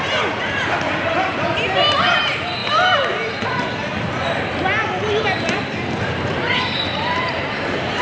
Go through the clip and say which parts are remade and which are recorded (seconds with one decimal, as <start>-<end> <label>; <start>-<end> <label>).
0.0-2.6 remade; 2.6-6.0 recorded; 6.0-8.0 remade